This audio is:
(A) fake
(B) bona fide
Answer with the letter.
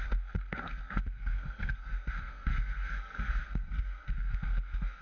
A